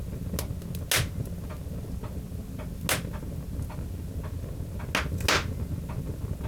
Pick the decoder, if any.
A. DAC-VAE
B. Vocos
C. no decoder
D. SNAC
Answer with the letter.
C